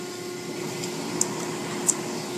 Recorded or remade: recorded